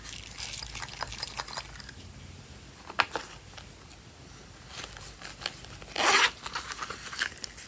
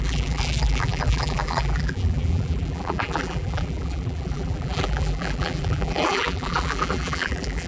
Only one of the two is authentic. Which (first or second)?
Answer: first